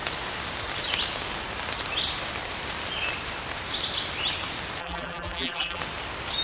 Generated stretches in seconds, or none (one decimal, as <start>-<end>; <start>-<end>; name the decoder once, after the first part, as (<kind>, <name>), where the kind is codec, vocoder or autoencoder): 4.8-5.8 (vocoder, BigVGAN v2)